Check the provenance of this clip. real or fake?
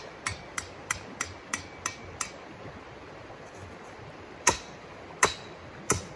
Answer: fake